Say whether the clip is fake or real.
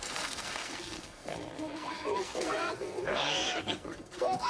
fake